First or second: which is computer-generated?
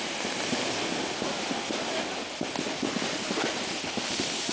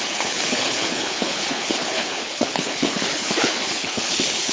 second